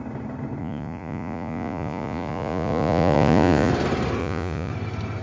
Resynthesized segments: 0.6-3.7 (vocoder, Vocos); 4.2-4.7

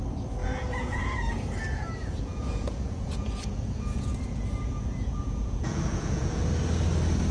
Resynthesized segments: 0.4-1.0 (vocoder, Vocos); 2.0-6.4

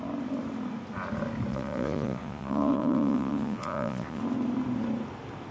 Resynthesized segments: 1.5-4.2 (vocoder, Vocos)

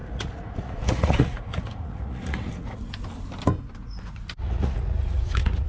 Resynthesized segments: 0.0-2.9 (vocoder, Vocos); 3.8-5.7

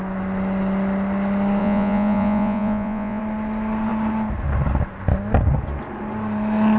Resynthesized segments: 1.6-3.2 (vocoder, Vocos)

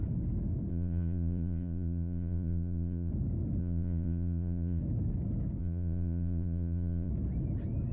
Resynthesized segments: 0.7-3.1 (vocoder, Vocos); 3.6-4.8; 5.6-7.1

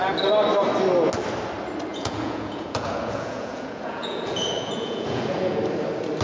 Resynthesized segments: 1.9-5.6 (vocoder, Vocos)

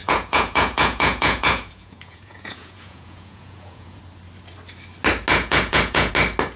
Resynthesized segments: 0.0-4.0 (vocoder, Vocos); 5.3-6.1